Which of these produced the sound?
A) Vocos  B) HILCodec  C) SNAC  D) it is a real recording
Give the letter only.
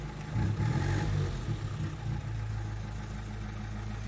D